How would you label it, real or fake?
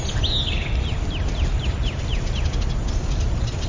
real